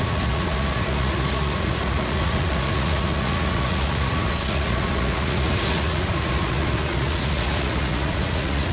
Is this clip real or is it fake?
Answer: fake